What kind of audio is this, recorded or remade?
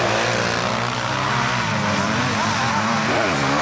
recorded